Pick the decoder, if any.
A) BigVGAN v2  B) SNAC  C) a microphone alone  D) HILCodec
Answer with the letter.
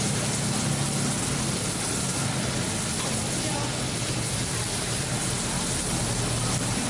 C